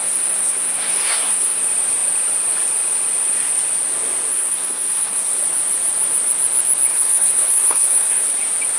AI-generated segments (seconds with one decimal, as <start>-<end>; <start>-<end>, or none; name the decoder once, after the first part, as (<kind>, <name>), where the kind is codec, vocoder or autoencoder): 0.0-1.6 (codec, SNAC); 4.3-5.4; 6.9-8.3